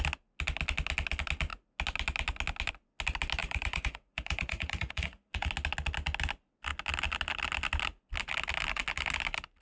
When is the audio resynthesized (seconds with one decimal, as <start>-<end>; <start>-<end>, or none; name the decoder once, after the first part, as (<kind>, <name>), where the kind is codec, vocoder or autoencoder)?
3.4-5.5 (vocoder, Vocos)